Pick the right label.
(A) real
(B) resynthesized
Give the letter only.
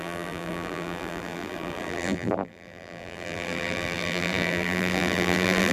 B